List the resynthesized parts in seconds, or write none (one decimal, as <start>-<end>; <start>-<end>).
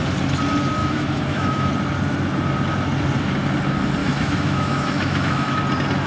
0.8-1.7; 4.0-5.6